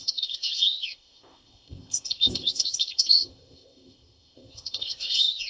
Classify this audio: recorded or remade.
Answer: remade